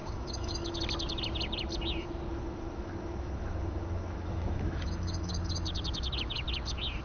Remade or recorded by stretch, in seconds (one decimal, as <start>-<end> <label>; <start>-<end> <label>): 0.0-0.8 remade; 0.8-2.3 recorded; 2.3-5.3 remade; 5.3-7.0 recorded